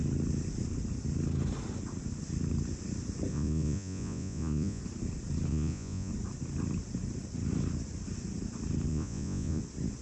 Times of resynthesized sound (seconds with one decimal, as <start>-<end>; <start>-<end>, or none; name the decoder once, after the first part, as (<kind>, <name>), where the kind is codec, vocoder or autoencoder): 3.3-4.8 (vocoder, Vocos); 5.5-6.1; 8.9-9.6